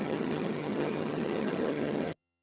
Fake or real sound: fake